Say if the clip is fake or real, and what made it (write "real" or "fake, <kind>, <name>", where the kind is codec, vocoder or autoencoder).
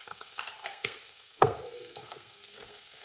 fake, codec, SNAC